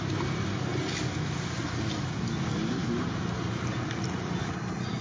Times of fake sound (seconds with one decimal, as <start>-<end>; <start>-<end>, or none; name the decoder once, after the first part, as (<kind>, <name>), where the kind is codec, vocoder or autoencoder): none